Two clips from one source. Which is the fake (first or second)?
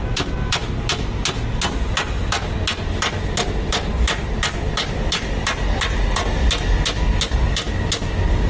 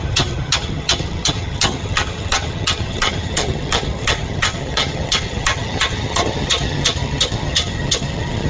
second